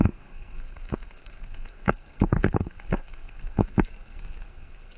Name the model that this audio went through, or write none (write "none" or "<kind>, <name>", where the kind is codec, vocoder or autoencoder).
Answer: codec, SNAC